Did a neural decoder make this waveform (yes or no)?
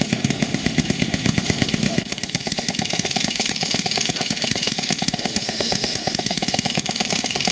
yes